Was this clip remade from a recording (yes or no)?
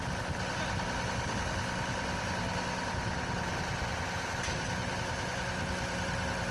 no